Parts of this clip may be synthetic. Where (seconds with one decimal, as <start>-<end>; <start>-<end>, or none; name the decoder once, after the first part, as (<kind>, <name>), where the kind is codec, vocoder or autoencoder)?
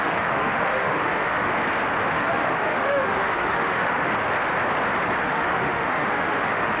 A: 0.0-1.5 (autoencoder, DAC-VAE); 2.1-4.1; 5.2-6.8